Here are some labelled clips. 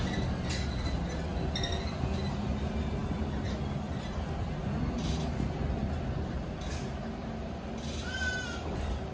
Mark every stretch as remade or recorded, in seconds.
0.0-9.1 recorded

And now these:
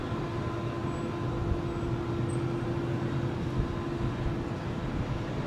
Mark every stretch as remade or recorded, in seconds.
0.0-5.5 recorded

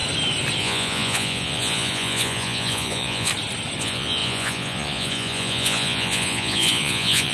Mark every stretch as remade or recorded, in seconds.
0.0-0.6 recorded; 0.6-3.3 remade; 3.3-3.8 recorded; 3.8-7.3 remade